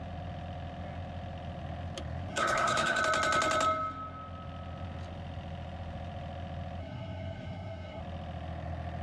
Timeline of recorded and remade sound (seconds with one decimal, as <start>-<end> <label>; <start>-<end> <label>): 0.0-2.3 recorded; 2.3-3.0 remade; 3.0-6.8 recorded; 6.8-8.0 remade; 8.0-9.0 recorded